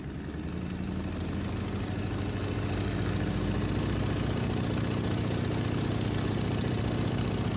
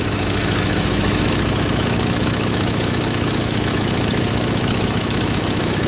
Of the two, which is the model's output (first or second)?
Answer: second